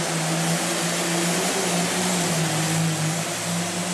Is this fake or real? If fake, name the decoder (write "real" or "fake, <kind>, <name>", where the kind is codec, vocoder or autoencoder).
real